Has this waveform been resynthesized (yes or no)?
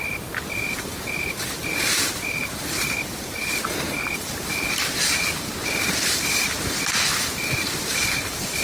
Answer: yes